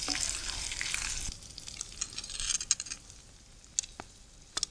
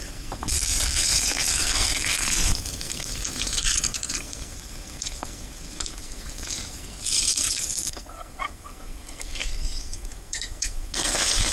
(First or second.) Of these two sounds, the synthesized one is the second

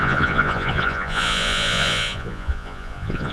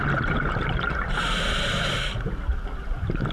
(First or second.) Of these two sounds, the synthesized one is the first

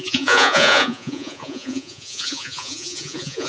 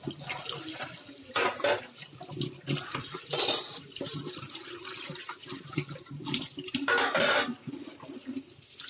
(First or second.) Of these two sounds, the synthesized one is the first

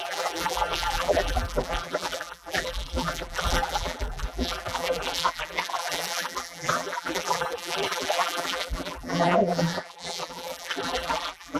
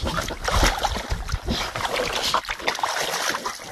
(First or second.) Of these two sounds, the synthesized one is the first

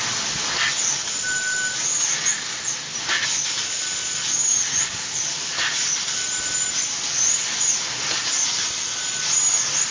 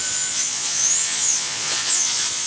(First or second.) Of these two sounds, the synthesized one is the second